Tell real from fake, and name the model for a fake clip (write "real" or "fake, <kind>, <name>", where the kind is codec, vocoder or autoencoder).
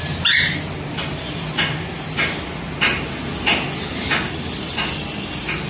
real